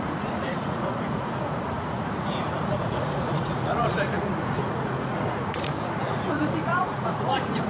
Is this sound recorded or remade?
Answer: remade